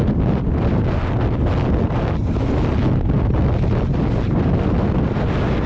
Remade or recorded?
recorded